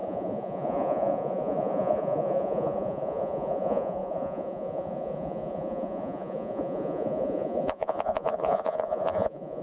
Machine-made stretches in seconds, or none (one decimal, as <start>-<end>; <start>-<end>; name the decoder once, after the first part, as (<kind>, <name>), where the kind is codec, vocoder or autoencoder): 0.0-9.6 (vocoder, Vocos)